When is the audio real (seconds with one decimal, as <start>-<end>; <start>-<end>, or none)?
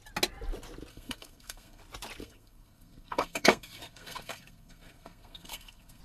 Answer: 0.0-0.9; 1.8-2.2